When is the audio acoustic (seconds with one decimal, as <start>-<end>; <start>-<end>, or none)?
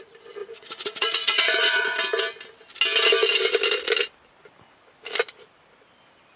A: 0.0-0.4; 2.0-6.4